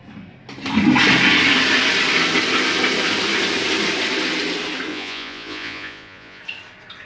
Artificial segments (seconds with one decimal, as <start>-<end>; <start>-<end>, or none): 4.9-6.4